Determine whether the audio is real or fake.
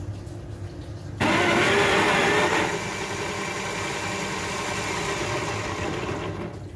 real